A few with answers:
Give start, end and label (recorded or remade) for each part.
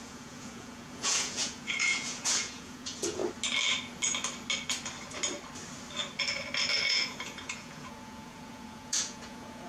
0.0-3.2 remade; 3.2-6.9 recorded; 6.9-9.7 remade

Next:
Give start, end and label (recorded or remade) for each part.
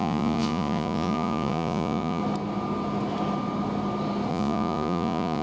0.0-2.2 remade; 2.2-4.3 recorded; 4.3-5.4 remade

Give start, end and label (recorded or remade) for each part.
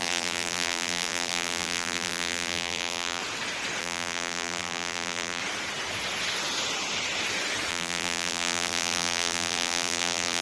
0.0-3.2 remade; 3.2-3.8 recorded; 3.8-5.4 remade; 5.4-7.7 recorded; 7.7-10.4 remade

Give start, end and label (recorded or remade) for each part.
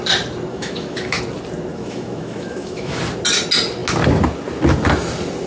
0.0-0.5 recorded; 0.5-1.2 remade; 1.2-1.7 recorded; 1.7-3.0 remade; 3.0-5.5 recorded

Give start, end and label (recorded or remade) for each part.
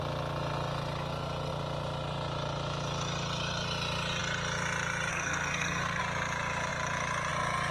0.0-5.1 recorded; 5.1-6.0 remade; 6.0-7.7 recorded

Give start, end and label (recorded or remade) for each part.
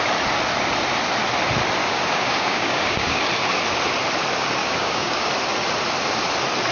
0.0-1.8 recorded; 1.8-3.2 remade; 3.2-4.6 recorded; 4.6-5.3 remade; 5.3-6.7 recorded